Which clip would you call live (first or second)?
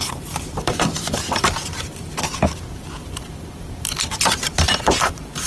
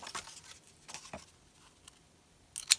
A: second